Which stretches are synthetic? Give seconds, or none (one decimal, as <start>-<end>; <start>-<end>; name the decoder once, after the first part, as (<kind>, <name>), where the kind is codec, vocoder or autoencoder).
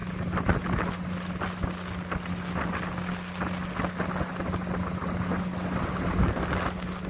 none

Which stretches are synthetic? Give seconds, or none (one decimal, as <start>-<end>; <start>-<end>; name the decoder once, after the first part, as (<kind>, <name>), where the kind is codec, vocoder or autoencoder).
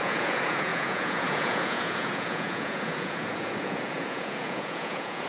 0.0-5.3 (vocoder, Vocos)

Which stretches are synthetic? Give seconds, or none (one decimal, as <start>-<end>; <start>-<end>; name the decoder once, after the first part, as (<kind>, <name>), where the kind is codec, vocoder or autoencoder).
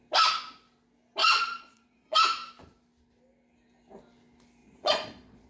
1.2-2.2 (vocoder, Vocos); 4.6-5.5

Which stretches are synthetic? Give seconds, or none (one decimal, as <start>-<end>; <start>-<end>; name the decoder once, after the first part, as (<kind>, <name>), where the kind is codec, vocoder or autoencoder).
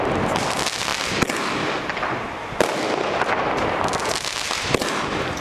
none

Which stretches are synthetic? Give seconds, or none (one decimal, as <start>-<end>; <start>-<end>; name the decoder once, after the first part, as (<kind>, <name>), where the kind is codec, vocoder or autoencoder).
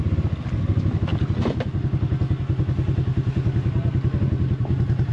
none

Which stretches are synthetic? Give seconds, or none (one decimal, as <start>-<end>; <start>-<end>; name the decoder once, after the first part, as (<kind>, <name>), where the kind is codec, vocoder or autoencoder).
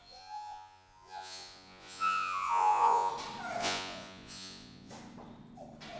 0.0-3.1 (vocoder, Vocos); 3.6-4.9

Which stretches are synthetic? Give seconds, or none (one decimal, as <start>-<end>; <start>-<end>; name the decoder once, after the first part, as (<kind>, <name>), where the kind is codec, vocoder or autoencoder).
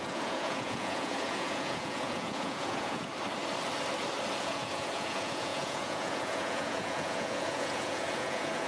0.0-3.1 (vocoder, Vocos); 4.4-8.7